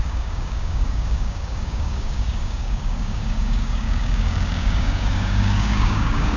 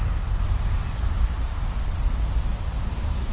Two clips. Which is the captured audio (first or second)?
second